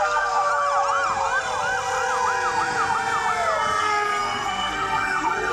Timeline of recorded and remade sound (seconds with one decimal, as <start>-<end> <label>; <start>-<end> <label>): 0.0-0.5 remade; 0.5-3.8 recorded; 3.8-5.5 remade